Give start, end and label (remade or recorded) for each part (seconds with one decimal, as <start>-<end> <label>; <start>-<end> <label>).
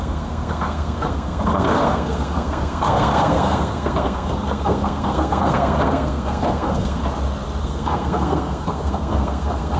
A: 0.0-7.0 remade; 7.0-7.6 recorded; 7.6-9.8 remade